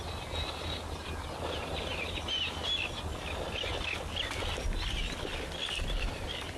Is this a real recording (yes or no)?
yes